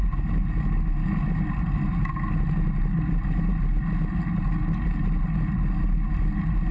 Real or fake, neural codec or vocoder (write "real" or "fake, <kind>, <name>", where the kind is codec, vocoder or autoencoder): real